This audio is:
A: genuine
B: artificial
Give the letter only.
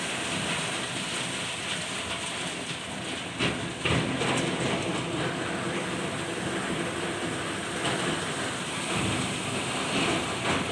A